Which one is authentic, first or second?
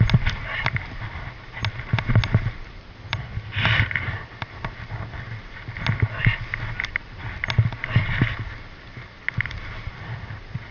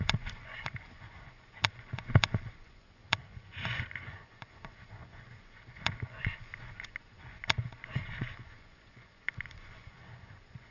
first